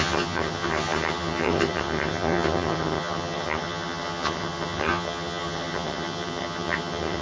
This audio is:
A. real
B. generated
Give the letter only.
B